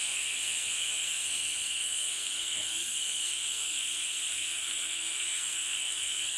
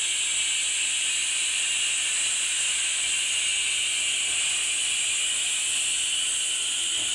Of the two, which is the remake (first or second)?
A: first